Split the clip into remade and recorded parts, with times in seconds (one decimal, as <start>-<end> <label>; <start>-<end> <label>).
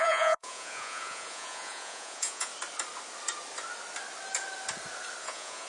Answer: 0.0-2.5 remade; 2.5-5.2 recorded; 5.2-5.7 remade